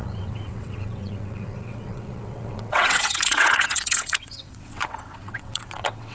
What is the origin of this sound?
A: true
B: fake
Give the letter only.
B